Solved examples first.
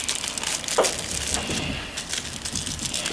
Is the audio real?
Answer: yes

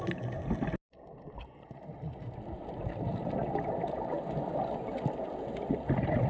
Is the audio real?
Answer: yes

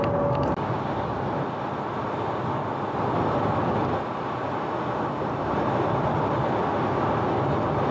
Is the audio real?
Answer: yes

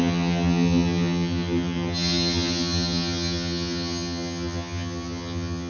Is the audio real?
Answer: no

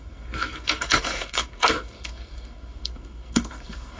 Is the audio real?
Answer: no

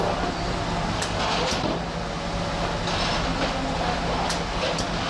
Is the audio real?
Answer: yes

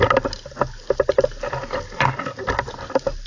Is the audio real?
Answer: yes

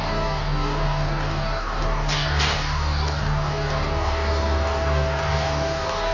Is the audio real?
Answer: no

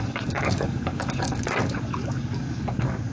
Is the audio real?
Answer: no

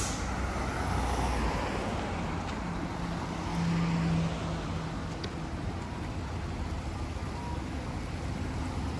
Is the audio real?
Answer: yes